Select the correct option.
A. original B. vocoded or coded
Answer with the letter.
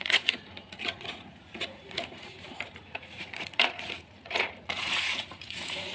B